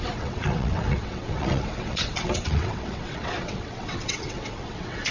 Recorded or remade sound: remade